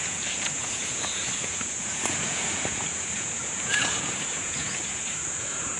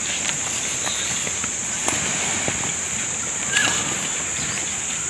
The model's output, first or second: first